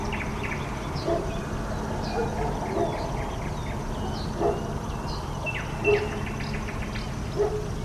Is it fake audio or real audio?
real